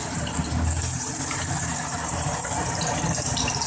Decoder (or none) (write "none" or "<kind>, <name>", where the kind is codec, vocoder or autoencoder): none